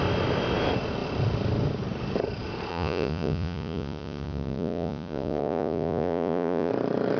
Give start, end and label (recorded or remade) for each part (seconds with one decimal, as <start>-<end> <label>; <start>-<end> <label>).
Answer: 0.0-2.7 recorded; 2.7-6.7 remade; 6.7-7.2 recorded